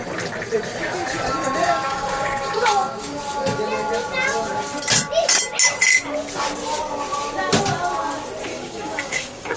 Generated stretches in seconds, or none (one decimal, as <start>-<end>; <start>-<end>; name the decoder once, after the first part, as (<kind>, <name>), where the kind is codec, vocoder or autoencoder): 1.6-3.2 (codec, DAC); 8.5-9.6